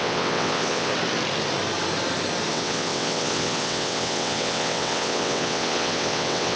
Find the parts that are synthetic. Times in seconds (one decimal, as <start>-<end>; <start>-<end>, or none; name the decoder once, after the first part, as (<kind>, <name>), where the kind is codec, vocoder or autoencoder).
0.0-0.9 (vocoder, WaveNeXt); 2.5-6.6